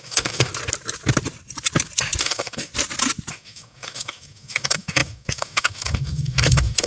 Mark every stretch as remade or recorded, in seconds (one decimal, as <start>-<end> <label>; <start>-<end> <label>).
0.0-0.5 remade; 0.5-2.2 recorded; 2.2-2.7 remade; 2.7-3.3 recorded; 3.3-6.9 remade